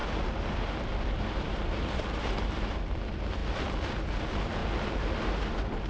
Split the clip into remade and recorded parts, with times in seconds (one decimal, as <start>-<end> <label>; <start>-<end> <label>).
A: 0.0-1.0 recorded; 1.0-3.4 remade; 3.4-4.0 recorded; 4.0-4.6 remade; 4.6-5.9 recorded